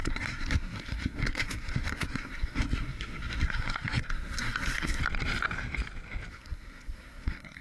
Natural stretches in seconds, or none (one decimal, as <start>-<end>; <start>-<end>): 5.0-6.3